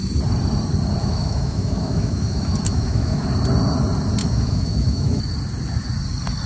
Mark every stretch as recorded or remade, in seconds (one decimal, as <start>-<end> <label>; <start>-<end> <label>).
0.0-1.0 recorded; 1.0-3.2 remade; 3.2-4.2 recorded; 4.2-5.2 remade; 5.2-6.5 recorded